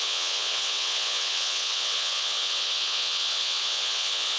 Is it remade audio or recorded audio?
remade